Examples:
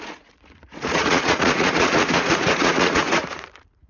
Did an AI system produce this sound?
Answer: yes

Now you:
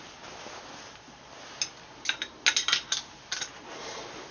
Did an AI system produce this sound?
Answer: no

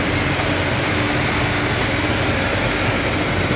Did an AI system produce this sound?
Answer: no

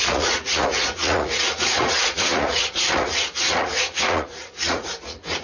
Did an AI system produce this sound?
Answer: yes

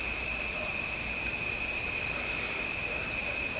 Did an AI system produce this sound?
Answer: no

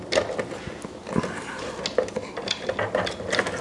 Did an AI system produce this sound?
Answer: no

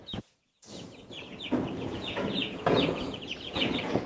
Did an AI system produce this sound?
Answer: yes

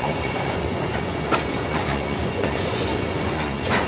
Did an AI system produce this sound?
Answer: yes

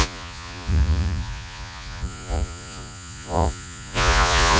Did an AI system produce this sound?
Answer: yes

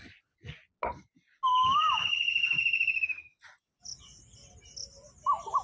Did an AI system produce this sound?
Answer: no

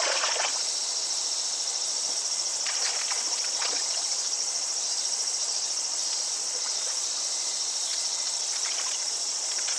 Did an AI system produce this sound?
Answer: yes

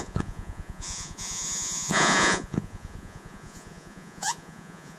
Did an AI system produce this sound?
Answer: yes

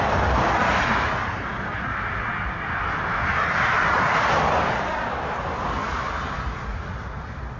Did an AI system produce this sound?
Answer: no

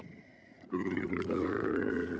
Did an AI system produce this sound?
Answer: yes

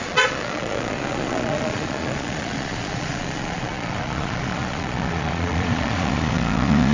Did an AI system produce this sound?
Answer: yes